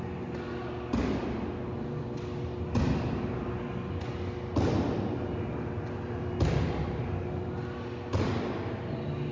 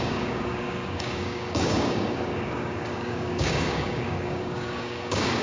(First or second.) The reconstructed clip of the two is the second